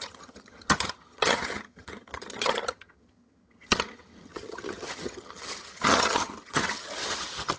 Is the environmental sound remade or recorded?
remade